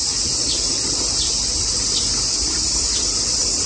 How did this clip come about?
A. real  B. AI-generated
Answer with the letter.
B